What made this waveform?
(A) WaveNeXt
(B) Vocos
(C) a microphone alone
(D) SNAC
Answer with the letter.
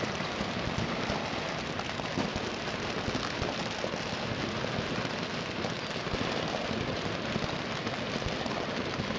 C